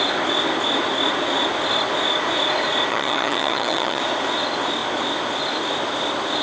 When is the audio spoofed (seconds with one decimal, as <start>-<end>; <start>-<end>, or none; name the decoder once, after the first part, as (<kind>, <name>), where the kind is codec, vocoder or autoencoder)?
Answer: 2.9-4.0 (vocoder, HiFi-GAN)